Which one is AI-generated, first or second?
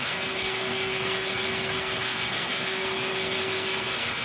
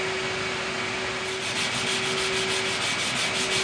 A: first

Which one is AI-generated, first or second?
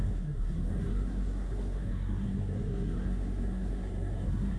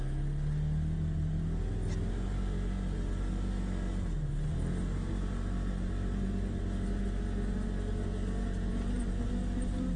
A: first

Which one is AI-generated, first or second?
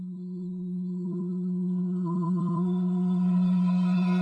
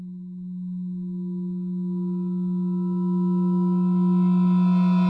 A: first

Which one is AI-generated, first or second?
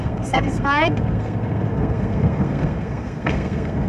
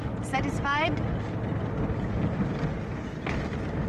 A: first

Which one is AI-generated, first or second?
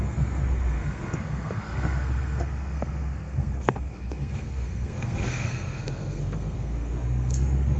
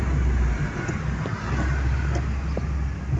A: first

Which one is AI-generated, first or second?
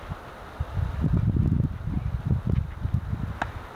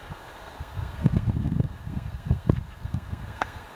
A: second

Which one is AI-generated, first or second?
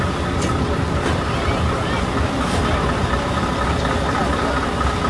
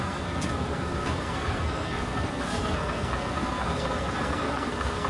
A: second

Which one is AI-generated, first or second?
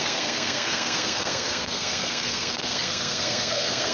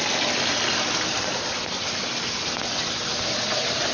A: first